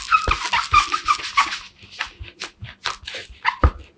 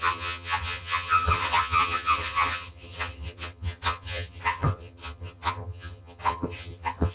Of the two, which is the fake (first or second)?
second